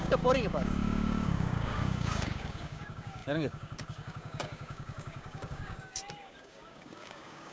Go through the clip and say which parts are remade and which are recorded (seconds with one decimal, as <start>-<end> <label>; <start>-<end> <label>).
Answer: 0.0-7.5 remade

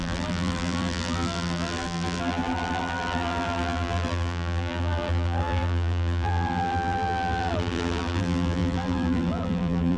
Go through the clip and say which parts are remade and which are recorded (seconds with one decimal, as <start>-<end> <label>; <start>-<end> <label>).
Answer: 0.0-10.0 remade

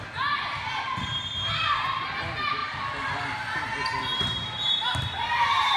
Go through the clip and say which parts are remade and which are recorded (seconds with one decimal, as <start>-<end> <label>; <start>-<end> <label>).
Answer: 0.0-5.8 recorded

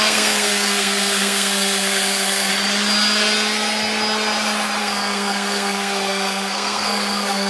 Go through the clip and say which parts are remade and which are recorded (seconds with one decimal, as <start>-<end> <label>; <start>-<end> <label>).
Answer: 0.0-2.5 remade; 2.5-4.8 recorded; 4.8-7.5 remade

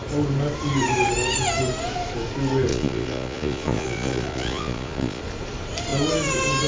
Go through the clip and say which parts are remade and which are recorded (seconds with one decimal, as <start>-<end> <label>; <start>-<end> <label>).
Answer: 0.0-2.7 recorded; 2.7-5.2 remade; 5.2-6.7 recorded

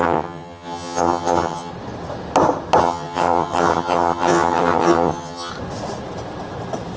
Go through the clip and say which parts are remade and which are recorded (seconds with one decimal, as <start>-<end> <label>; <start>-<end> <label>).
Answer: 0.0-1.7 remade; 1.7-2.8 recorded; 2.8-5.5 remade; 5.5-7.0 recorded

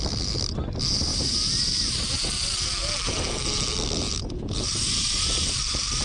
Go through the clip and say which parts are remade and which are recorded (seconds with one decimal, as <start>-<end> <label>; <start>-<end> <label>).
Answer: 0.0-1.1 recorded; 1.1-2.3 remade; 2.3-2.8 recorded; 2.8-6.0 remade

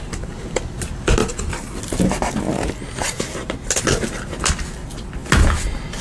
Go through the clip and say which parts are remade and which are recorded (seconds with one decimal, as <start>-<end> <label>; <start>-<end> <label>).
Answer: 0.0-6.0 recorded